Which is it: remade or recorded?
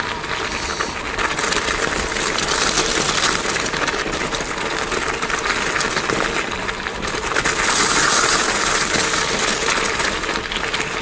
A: recorded